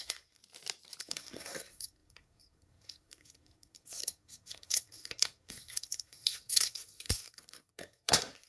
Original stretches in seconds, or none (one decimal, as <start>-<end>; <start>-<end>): 0.4-1.0